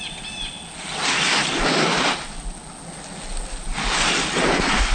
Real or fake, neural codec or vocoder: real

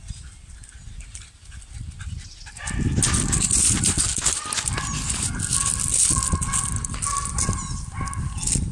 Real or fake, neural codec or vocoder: real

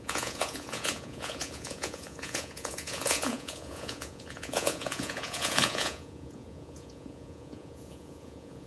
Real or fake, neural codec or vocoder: fake, vocoder, Vocos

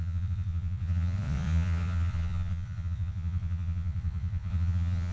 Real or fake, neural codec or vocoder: fake, vocoder, Vocos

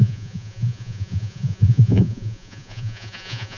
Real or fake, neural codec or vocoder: fake, vocoder, Vocos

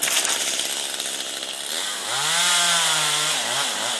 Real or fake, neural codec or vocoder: real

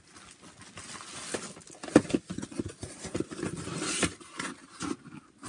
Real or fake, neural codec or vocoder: real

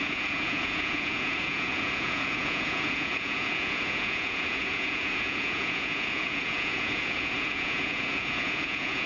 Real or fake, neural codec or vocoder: fake, vocoder, Vocos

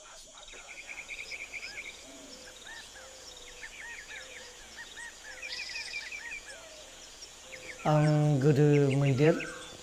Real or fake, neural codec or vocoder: fake, vocoder, Vocos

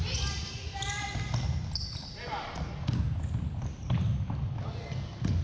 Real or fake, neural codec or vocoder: real